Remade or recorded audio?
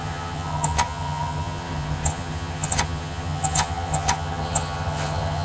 remade